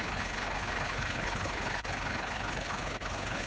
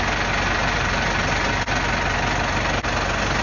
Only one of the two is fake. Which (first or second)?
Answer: first